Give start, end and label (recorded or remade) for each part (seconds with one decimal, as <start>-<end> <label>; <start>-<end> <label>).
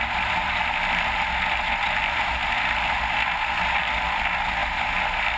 0.0-5.4 recorded